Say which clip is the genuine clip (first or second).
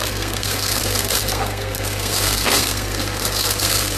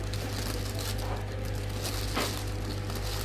second